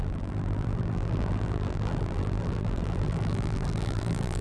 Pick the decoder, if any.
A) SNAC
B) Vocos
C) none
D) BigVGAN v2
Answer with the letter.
D